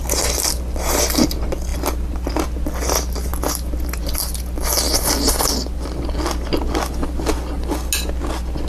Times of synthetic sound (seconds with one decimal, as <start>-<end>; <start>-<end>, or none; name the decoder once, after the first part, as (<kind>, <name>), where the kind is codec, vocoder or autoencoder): none